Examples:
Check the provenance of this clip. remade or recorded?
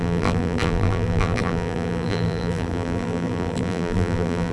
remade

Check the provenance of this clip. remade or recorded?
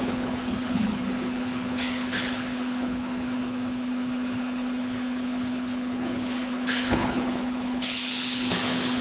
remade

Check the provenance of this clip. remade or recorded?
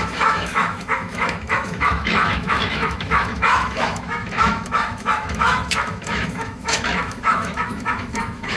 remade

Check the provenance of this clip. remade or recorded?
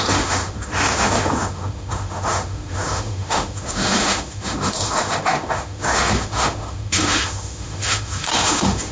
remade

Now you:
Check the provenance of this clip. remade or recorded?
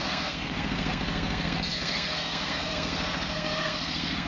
remade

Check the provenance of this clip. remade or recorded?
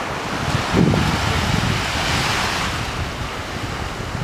recorded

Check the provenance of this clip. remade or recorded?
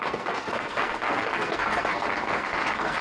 remade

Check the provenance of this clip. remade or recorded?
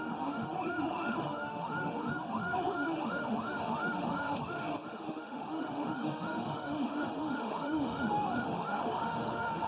remade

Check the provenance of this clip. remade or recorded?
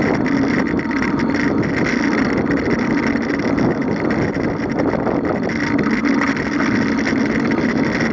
recorded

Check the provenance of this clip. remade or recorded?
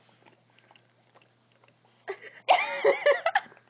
recorded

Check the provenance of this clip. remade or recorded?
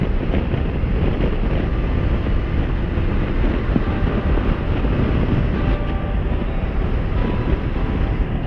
recorded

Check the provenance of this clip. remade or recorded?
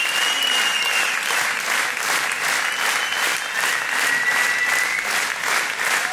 recorded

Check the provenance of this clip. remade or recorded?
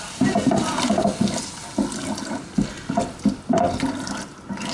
recorded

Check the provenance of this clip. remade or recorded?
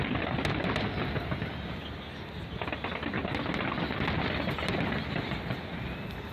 recorded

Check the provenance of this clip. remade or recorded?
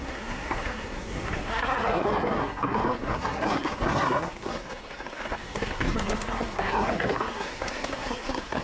remade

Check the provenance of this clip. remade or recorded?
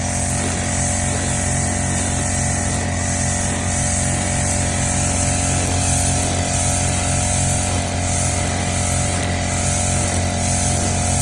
recorded